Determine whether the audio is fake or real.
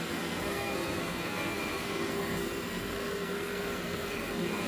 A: fake